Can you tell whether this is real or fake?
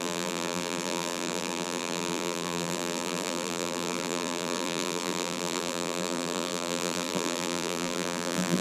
fake